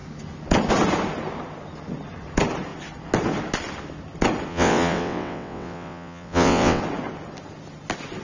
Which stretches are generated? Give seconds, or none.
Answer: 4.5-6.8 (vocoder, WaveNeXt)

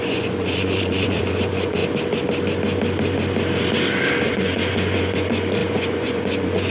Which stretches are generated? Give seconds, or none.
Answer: 0.0-1.8 (vocoder, Vocos); 4.3-6.7

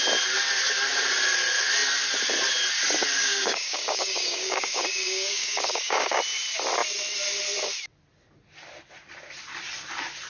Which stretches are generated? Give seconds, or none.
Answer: 3.2-6.2 (codec, DAC)

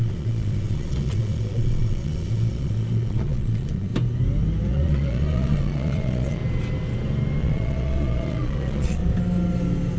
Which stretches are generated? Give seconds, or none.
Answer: 0.0-3.9 (vocoder, Vocos); 4.7-6.4; 7.4-9.0

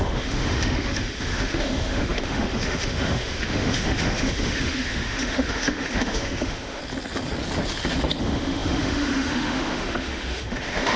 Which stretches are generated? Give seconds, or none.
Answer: 0.0-6.8 (autoencoder, DAC-VAE); 8.2-11.0

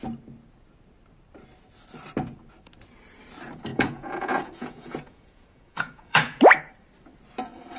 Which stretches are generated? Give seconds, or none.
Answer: 3.7-6.4 (vocoder, Vocos)

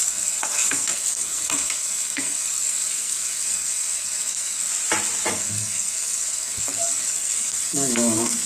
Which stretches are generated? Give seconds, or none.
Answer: 0.0-4.7 (codec, SNAC); 5.3-8.5